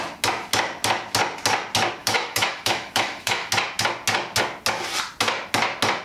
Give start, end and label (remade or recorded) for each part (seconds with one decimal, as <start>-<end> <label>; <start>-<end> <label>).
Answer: 0.0-2.0 recorded; 2.0-3.5 remade; 3.5-6.0 recorded